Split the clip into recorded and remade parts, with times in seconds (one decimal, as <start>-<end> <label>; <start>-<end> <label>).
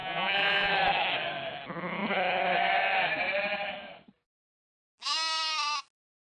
0.0-0.7 remade; 0.7-6.3 recorded